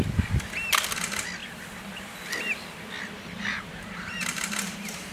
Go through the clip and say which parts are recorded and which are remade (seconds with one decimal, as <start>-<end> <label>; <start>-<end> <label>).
0.0-1.4 recorded; 1.4-1.9 remade; 1.9-3.5 recorded; 3.5-5.1 remade